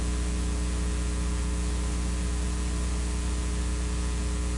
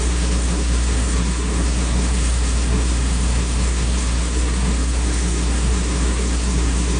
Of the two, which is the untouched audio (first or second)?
first